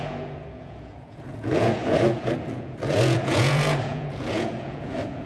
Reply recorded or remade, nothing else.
remade